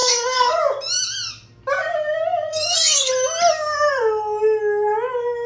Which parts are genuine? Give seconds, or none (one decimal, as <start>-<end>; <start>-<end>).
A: 0.6-2.5; 3.1-5.5